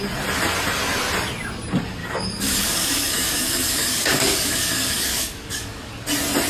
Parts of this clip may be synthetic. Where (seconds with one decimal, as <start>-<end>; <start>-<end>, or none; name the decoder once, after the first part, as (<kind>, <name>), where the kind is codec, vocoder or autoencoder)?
2.0-5.9 (codec, DAC)